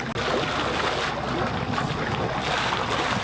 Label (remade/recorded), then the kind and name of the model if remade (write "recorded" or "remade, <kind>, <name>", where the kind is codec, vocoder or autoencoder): recorded